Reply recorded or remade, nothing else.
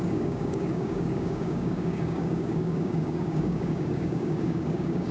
remade